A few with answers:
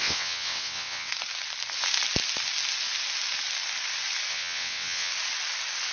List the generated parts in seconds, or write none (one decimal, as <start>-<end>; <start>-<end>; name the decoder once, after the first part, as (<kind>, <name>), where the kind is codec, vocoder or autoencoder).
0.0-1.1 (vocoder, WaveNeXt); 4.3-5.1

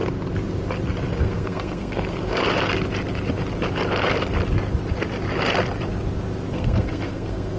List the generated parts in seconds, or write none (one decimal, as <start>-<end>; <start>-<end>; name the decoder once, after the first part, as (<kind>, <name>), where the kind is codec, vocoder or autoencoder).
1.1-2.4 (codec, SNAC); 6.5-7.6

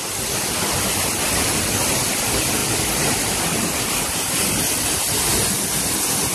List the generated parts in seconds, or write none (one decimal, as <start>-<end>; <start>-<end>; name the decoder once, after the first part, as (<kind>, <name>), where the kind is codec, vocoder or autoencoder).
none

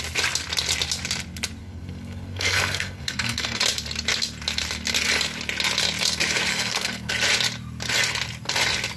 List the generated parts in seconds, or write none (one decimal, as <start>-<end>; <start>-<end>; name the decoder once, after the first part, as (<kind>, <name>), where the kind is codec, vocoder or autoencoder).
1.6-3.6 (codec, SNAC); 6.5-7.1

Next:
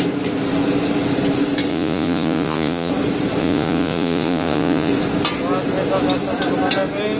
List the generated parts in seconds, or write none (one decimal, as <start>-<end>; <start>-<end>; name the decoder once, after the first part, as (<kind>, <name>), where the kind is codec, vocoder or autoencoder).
1.7-2.9 (vocoder, Vocos); 3.4-4.9

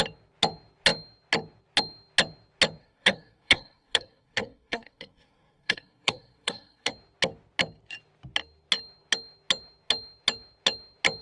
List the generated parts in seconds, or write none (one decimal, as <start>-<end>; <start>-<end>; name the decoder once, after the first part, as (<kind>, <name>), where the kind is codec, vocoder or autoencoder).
2.8-6.9 (codec, SNAC)